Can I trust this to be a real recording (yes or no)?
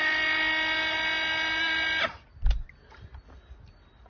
yes